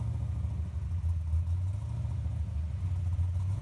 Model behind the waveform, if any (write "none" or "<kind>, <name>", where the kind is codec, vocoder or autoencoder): none